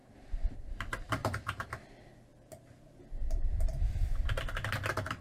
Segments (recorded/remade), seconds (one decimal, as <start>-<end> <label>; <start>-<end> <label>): 0.0-0.7 remade; 0.7-1.2 recorded; 1.2-1.8 remade; 1.8-5.2 recorded